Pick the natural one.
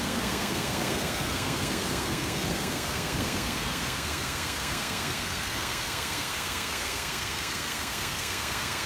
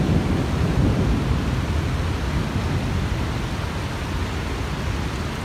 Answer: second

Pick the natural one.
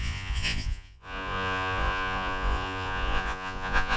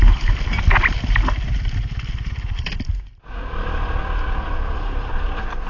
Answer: second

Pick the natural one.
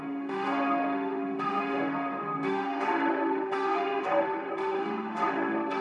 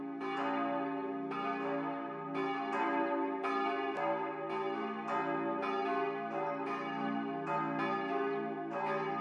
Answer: second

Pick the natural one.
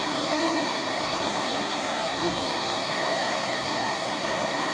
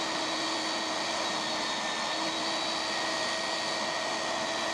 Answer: second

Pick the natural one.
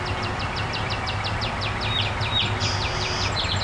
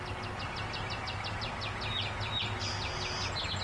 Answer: second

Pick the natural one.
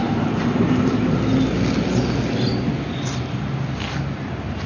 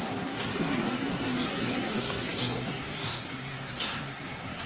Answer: first